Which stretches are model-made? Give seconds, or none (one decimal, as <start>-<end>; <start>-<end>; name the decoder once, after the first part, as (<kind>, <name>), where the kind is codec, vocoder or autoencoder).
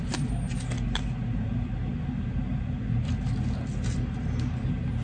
none